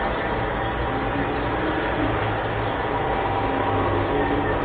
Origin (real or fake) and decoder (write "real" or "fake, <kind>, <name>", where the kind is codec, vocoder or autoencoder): real